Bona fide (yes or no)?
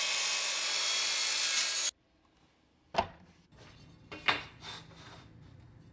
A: yes